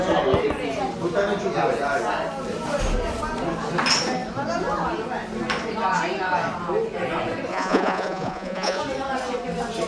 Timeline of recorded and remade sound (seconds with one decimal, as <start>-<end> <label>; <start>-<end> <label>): 0.0-7.5 recorded; 7.5-8.8 remade; 8.8-9.9 recorded